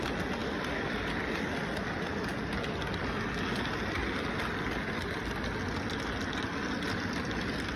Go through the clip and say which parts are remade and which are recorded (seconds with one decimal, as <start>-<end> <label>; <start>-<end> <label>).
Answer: 0.0-7.8 recorded